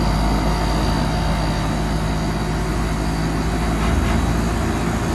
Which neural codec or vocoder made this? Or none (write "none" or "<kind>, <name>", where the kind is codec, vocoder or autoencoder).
none